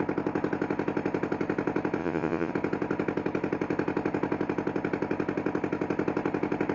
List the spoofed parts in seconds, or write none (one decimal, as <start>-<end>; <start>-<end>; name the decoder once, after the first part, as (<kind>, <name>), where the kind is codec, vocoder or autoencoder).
2.0-2.5 (vocoder, Vocos)